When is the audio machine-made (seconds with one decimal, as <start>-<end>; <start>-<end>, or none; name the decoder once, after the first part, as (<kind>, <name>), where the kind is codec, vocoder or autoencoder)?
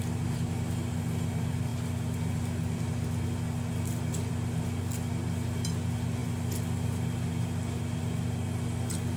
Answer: none